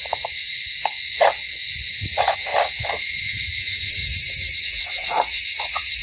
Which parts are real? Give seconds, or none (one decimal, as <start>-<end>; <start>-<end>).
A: 0.7-1.9; 2.5-3.2; 4.0-4.6